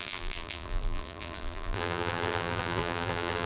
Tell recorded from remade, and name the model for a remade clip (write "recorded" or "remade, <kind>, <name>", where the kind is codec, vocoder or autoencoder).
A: remade, vocoder, BigVGAN v2